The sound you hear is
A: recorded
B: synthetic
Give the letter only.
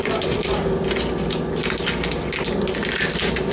A